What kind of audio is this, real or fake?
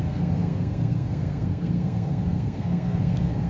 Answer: fake